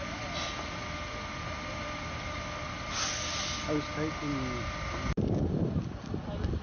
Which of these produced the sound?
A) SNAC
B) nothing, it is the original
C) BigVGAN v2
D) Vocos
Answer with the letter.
B